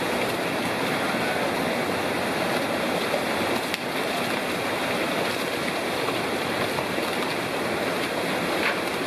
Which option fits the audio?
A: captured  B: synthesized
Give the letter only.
A